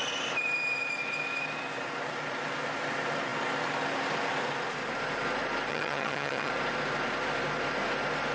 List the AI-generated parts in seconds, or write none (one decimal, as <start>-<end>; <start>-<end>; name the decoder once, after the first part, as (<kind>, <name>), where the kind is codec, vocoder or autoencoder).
5.7-6.5 (vocoder, HiFi-GAN)